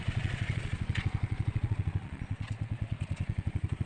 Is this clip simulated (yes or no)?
yes